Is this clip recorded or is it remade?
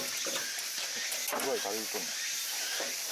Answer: recorded